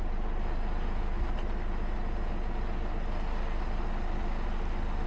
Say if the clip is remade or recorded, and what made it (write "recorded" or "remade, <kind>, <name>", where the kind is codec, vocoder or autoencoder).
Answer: recorded